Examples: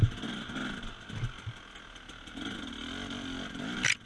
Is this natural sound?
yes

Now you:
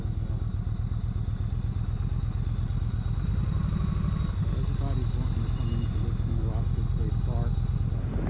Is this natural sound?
yes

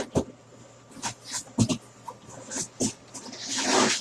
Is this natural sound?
yes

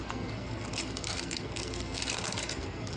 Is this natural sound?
no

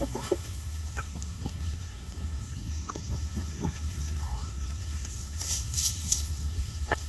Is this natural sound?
no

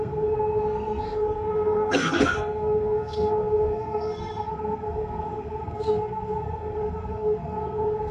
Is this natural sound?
no